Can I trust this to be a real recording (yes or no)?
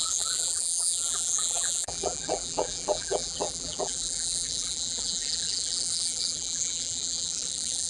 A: no